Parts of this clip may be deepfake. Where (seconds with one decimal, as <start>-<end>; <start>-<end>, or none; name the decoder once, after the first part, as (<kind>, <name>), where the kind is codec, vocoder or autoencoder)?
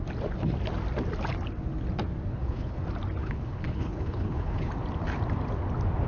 2.3-2.8 (codec, HILCodec); 3.2-4.7